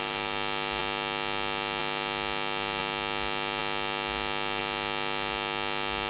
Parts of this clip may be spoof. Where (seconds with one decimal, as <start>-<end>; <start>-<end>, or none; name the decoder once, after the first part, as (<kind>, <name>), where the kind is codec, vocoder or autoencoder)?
none